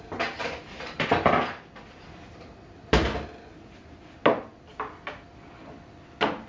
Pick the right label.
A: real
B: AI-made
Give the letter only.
A